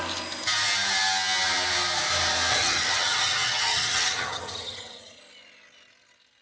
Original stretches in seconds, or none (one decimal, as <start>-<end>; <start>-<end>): 0.0-2.5; 5.2-6.4

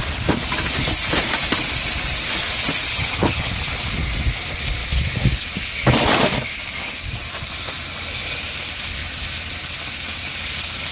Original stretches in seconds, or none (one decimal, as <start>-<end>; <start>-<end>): 0.0-2.9; 3.5-10.9

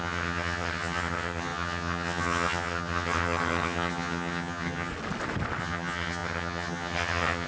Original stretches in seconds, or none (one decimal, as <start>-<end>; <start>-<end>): 4.9-5.6

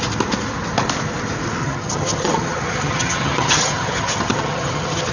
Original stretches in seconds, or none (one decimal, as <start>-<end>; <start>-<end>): 0.0-1.6